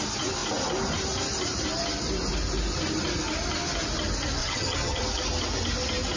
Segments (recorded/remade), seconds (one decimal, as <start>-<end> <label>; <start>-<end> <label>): 0.0-4.4 recorded; 4.4-5.0 remade; 5.0-6.2 recorded